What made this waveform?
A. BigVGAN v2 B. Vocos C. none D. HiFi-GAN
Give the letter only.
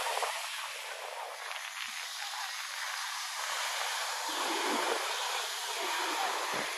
C